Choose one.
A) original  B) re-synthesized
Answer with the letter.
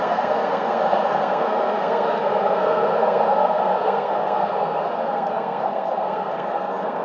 B